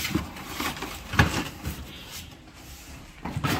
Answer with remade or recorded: remade